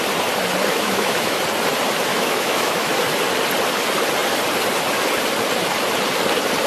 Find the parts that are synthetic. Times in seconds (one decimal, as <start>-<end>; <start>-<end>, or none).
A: 0.7-1.4; 2.1-2.9